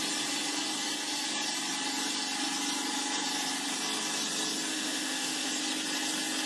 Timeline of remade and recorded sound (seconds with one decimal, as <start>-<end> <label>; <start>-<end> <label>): 0.0-4.7 recorded; 4.7-5.5 remade; 5.5-6.5 recorded